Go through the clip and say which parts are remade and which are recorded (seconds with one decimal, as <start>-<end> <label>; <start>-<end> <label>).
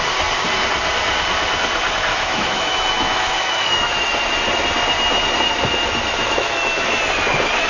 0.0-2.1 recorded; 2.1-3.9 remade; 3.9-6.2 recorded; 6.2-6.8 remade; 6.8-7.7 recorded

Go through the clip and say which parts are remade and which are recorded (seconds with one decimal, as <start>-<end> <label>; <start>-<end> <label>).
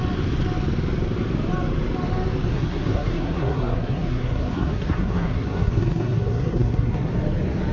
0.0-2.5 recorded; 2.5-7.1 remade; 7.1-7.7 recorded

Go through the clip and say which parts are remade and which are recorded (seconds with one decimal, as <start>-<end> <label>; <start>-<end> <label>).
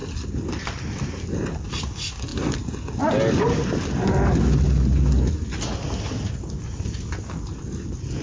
0.0-8.2 recorded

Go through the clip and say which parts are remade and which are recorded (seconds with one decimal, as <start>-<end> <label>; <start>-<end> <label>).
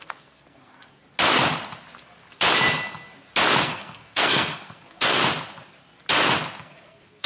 0.0-1.0 remade; 1.0-3.6 recorded; 3.6-5.2 remade; 5.2-6.6 recorded; 6.6-7.3 remade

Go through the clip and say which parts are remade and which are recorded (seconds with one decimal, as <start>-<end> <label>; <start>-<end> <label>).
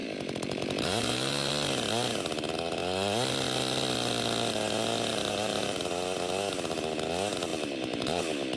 0.0-1.5 remade; 1.5-5.1 recorded; 5.1-5.8 remade; 5.8-7.5 recorded; 7.5-8.2 remade; 8.2-8.6 recorded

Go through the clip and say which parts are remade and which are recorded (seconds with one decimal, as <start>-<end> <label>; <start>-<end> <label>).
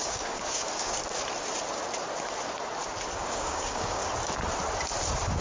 0.0-1.0 remade; 1.0-3.2 recorded; 3.2-4.0 remade; 4.0-5.4 recorded